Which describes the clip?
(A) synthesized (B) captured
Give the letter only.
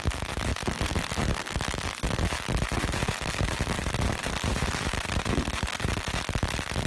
A